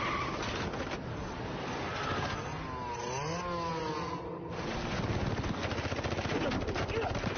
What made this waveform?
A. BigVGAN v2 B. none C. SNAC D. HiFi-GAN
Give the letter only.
B